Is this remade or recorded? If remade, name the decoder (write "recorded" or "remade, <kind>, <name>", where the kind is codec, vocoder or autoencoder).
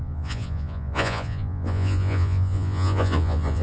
remade, vocoder, Vocos